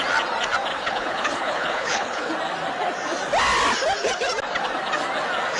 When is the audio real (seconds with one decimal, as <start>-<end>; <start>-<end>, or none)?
0.0-0.7; 2.3-5.6